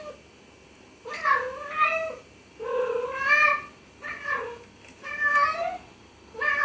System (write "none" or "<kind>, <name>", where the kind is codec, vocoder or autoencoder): none